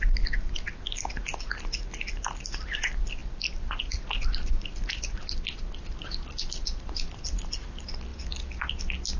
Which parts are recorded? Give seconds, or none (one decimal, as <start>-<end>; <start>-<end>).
0.0-9.2